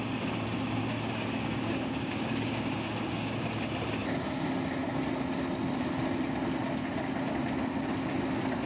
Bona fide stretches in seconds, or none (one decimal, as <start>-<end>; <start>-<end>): 0.0-0.9; 3.6-8.7